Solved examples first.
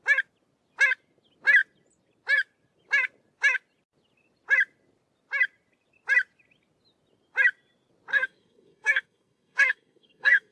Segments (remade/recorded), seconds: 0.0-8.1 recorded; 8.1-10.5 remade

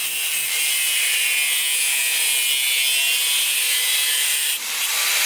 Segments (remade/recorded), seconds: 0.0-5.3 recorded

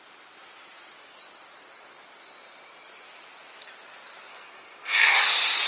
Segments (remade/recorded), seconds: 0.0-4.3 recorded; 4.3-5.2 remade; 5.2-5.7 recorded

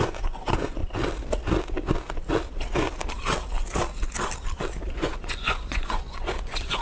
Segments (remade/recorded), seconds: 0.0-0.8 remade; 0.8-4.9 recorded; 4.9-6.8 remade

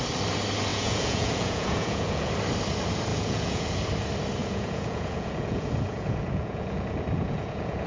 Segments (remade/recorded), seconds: 0.0-0.7 recorded; 0.7-2.3 remade; 2.3-3.1 recorded; 3.1-3.8 remade; 3.8-4.4 recorded; 4.4-7.9 remade

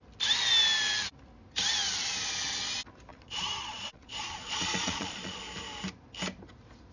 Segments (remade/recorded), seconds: 0.0-3.1 recorded; 3.1-5.4 remade; 5.4-6.9 recorded

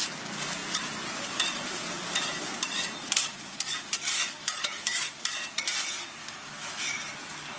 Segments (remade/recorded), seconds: 0.0-4.4 recorded; 4.4-5.1 remade; 5.1-6.2 recorded; 6.2-6.9 remade; 6.9-7.6 recorded

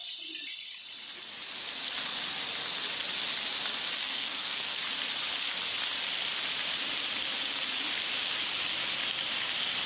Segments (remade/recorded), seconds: 0.0-4.0 recorded; 4.0-4.8 remade; 4.8-9.9 recorded